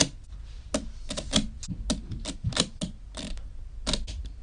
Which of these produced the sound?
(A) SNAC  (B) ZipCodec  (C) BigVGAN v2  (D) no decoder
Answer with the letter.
D